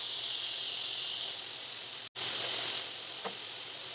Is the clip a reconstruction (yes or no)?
no